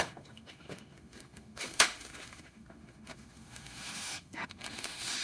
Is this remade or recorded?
remade